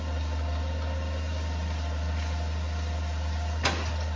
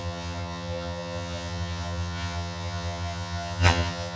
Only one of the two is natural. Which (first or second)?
first